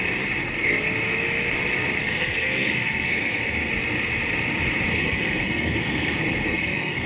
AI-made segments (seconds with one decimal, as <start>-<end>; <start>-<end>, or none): 2.0-3.7; 4.9-7.1

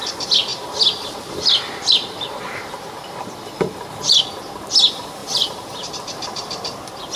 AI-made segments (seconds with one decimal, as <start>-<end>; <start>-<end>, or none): 0.5-4.5; 5.2-5.9

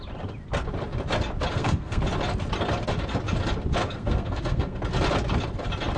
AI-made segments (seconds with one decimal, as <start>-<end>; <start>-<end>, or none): 1.5-2.0; 3.8-4.8

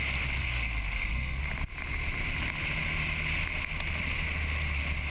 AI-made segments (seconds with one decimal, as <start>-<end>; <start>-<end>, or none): 0.4-1.4

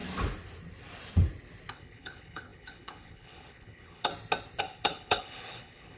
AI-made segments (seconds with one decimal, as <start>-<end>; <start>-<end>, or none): 1.7-4.1; 4.6-6.0

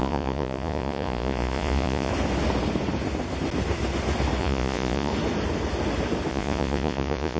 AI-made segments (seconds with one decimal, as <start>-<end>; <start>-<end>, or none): 0.0-2.1; 4.4-5.1; 6.3-7.4